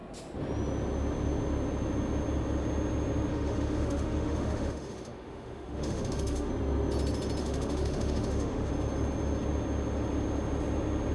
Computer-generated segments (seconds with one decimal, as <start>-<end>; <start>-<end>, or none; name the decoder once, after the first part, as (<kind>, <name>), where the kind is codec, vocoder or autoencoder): 3.3-6.5 (autoencoder, DAC-VAE); 7.4-8.7